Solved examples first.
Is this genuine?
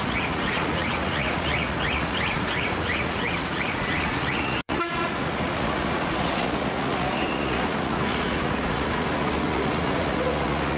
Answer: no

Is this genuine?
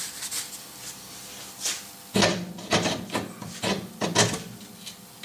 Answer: yes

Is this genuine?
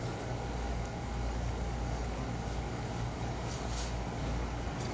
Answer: no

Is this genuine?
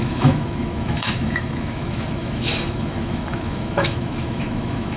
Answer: no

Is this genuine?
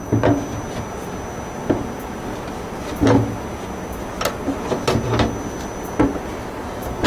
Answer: yes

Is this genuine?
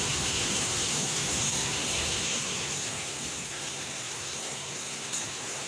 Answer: no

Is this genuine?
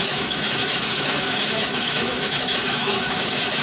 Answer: no